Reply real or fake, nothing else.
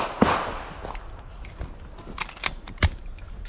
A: real